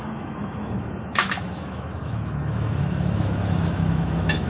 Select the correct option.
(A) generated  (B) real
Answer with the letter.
A